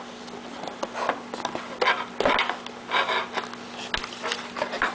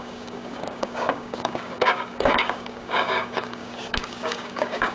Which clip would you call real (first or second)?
first